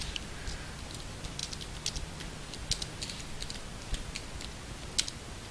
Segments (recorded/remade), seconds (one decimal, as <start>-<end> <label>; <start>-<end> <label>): 0.0-5.5 recorded